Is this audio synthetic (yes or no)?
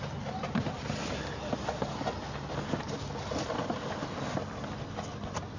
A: no